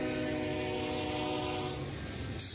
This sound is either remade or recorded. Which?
recorded